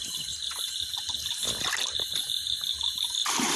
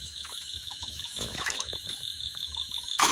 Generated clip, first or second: second